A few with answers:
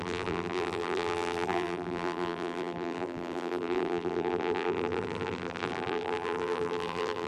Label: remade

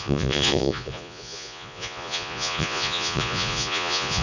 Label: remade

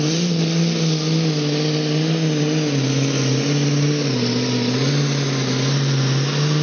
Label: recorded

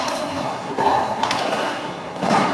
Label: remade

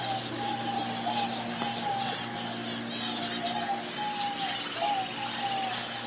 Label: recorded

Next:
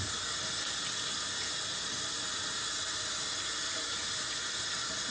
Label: recorded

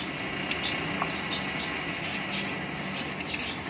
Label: recorded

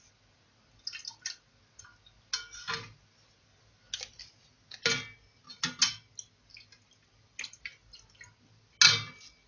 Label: recorded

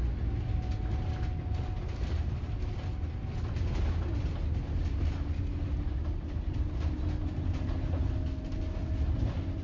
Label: recorded